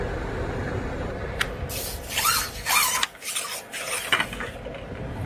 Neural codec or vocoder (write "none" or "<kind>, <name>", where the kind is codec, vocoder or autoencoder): none